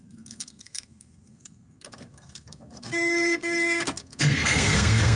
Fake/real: fake